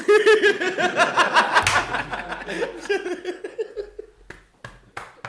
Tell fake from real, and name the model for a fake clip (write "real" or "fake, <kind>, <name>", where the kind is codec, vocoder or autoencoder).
real